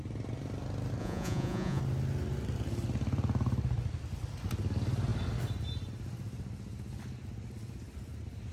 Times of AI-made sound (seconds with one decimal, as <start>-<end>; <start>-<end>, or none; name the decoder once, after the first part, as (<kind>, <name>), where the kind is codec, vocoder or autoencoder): 1.0-1.8 (vocoder, Vocos)